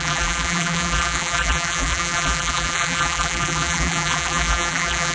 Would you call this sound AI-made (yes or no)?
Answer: yes